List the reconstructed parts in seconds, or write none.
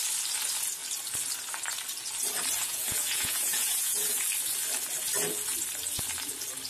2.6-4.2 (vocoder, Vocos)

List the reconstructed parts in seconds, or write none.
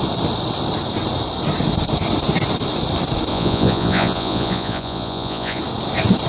3.3-5.6 (vocoder, Vocos)